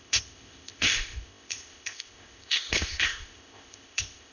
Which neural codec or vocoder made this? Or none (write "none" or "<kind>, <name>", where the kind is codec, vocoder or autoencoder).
codec, ZipCodec